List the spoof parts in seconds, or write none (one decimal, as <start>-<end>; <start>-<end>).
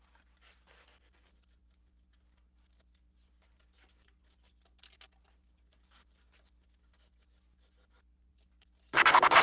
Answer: none